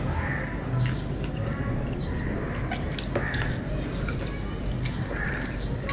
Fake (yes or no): no